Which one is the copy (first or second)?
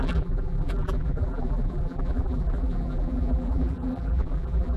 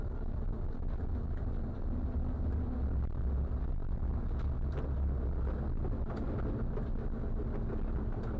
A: first